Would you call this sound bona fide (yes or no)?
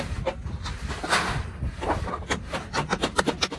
yes